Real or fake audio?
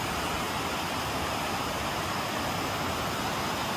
real